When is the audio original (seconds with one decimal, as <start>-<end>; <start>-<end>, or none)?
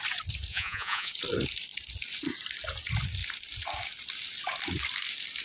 0.0-0.5; 1.1-5.4